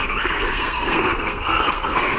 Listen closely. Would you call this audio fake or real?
fake